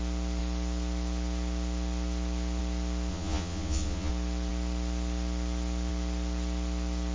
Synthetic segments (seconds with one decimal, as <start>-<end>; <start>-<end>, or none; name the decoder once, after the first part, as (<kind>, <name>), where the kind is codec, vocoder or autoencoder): 3.1-4.1 (vocoder, Vocos)